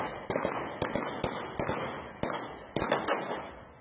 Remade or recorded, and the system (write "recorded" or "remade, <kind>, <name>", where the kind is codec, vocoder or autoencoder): recorded